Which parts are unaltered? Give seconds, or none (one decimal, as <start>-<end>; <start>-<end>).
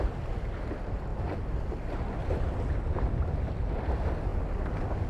0.0-5.1